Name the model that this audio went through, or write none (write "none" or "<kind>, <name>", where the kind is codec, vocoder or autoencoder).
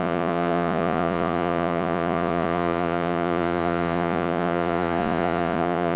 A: vocoder, Vocos